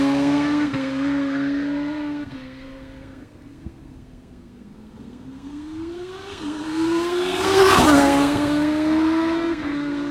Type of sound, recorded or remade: remade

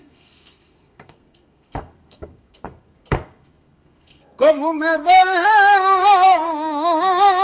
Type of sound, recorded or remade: remade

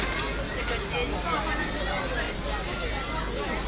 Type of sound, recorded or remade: recorded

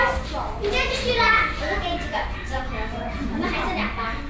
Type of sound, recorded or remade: recorded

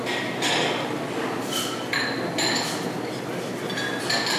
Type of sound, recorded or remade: recorded